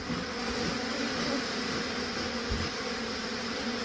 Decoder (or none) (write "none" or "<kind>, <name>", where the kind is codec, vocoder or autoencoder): none